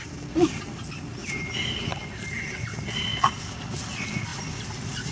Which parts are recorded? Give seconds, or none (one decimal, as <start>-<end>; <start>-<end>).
0.0-5.1